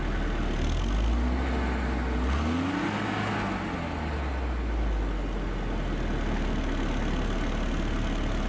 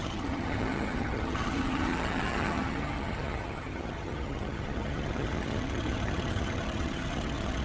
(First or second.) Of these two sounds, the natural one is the first